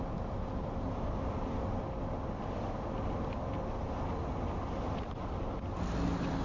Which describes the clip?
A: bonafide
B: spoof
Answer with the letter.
A